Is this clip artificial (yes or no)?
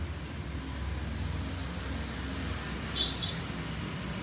no